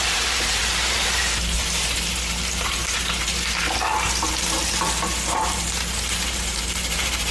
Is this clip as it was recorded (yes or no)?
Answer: no